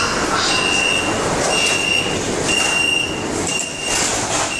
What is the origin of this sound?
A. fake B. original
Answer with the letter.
B